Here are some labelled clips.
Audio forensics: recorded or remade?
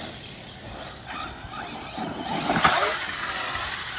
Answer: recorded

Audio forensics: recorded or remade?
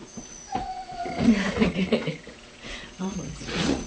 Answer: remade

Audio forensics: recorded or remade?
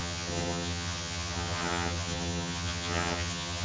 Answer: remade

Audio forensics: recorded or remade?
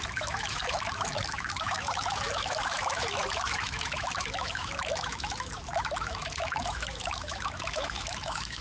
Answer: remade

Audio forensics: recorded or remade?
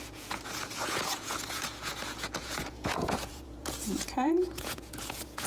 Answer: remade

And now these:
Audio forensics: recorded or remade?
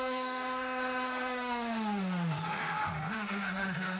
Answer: remade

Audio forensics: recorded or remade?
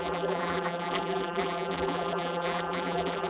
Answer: remade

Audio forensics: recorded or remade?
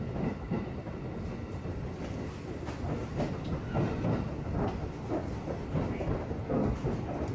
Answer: recorded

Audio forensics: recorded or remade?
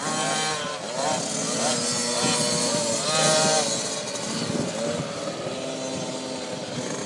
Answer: recorded